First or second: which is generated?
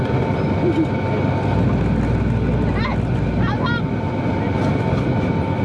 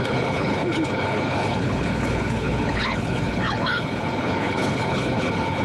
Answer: second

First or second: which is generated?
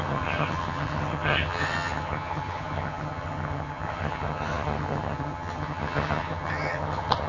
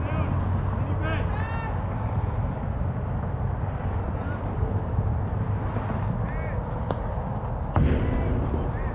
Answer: first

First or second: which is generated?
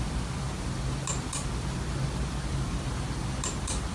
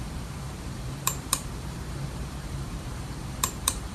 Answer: second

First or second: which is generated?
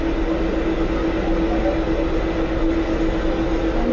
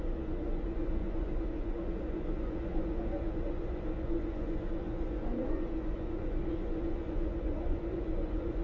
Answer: second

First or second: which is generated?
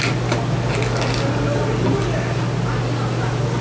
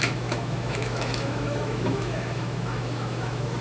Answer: second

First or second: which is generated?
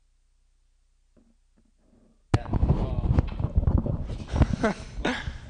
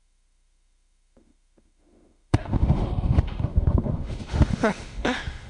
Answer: second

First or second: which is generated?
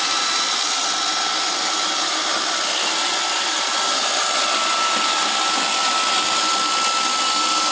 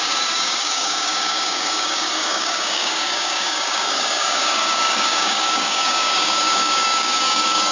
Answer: second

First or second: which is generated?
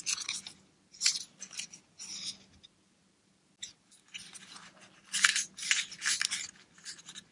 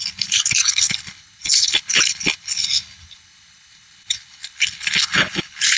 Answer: second